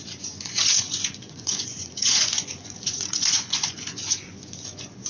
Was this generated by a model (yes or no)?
yes